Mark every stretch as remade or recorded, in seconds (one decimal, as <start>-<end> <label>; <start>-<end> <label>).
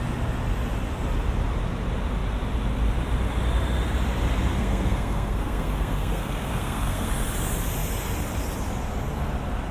0.0-4.5 recorded; 4.5-7.1 remade; 7.1-9.7 recorded